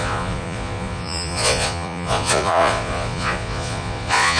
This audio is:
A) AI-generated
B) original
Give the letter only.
A